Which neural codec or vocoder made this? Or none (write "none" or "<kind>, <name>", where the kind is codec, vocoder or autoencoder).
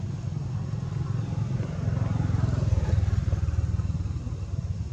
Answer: none